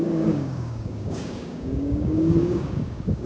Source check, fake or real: fake